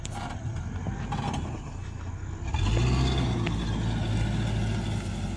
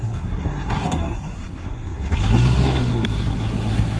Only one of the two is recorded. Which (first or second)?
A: first